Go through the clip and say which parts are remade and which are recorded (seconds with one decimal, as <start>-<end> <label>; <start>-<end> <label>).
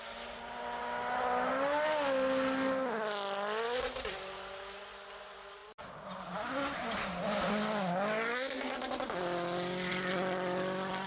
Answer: 0.0-11.1 recorded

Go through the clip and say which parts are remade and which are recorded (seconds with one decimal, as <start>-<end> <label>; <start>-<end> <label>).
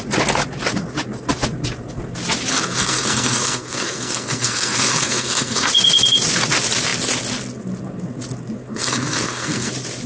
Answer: 0.0-2.5 recorded; 2.5-5.7 remade; 5.7-8.7 recorded; 8.7-9.7 remade; 9.7-10.1 recorded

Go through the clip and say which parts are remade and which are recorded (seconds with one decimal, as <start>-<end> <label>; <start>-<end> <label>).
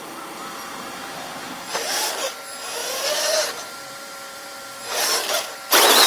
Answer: 0.0-2.8 recorded; 2.8-6.1 remade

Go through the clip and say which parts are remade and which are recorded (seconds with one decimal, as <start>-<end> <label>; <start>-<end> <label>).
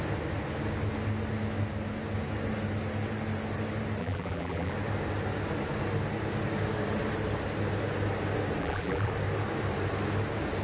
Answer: 0.0-4.0 recorded; 4.0-4.7 remade; 4.7-8.6 recorded; 8.6-9.1 remade; 9.1-10.6 recorded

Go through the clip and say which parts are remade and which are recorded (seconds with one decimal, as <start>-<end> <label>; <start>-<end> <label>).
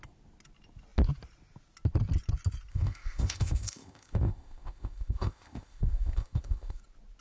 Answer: 0.0-2.7 recorded; 2.7-6.8 remade; 6.8-7.2 recorded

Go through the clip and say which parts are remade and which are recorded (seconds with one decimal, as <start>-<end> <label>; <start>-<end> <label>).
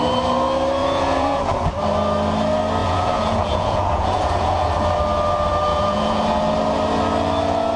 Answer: 0.0-0.8 recorded; 0.8-1.5 remade; 1.5-2.8 recorded; 2.8-4.7 remade; 4.7-5.7 recorded; 5.7-6.4 remade; 6.4-7.8 recorded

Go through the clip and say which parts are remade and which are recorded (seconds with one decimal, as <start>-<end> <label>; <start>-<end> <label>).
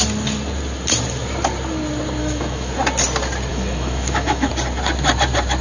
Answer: 0.0-2.2 recorded; 2.2-2.7 remade; 2.7-3.5 recorded; 3.5-4.5 remade; 4.5-5.6 recorded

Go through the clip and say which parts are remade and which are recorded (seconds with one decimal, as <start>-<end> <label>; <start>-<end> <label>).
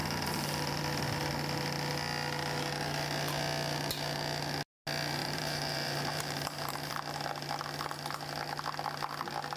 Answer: 0.0-0.8 remade; 0.8-5.2 recorded; 5.2-6.9 remade; 6.9-9.6 recorded